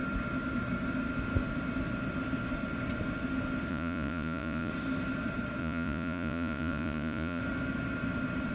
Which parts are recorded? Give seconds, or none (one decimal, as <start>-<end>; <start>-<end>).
0.0-3.7; 4.7-5.6; 7.4-8.5